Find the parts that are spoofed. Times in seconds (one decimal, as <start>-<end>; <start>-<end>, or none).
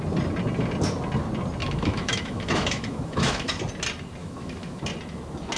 1.6-3.6; 4.2-4.8